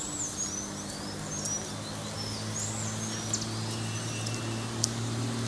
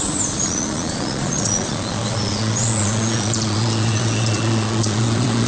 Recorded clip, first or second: first